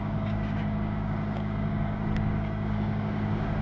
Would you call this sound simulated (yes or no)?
yes